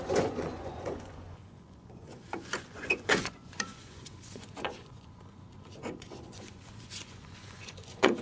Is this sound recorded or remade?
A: remade